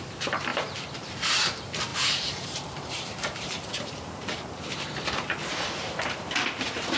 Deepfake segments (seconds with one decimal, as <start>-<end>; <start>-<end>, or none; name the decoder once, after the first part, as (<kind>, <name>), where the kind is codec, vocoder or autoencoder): 0.0-7.0 (vocoder, BigVGAN v2)